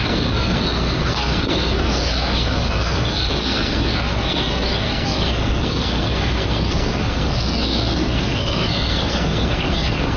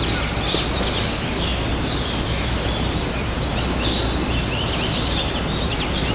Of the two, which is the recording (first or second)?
second